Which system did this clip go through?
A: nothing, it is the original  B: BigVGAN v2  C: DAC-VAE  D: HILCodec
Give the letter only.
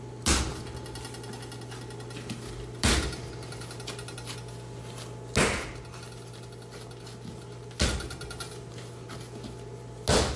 A